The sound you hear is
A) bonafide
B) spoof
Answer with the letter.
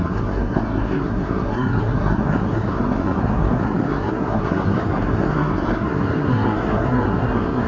B